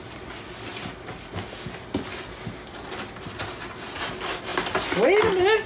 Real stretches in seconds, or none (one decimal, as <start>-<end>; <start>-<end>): 0.0-5.7